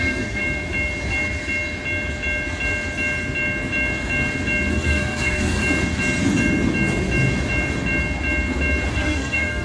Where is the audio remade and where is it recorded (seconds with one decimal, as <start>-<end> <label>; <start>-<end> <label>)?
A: 0.0-0.4 remade; 0.4-4.7 recorded; 4.7-5.6 remade; 5.6-8.9 recorded; 8.9-9.6 remade